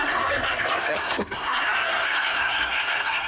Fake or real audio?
fake